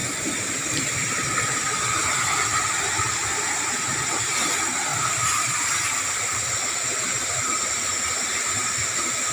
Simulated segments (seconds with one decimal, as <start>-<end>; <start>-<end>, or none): 0.0-3.5; 4.9-8.0